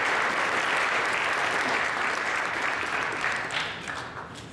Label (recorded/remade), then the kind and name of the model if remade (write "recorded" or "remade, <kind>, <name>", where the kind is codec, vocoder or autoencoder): remade, vocoder, BigVGAN v2